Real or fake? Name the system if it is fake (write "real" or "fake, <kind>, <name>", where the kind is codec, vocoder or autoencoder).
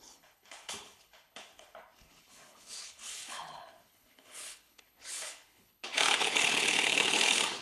fake, codec, HILCodec